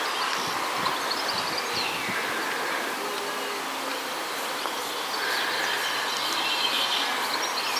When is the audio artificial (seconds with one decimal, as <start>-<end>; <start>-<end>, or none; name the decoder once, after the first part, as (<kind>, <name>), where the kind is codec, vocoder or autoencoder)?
none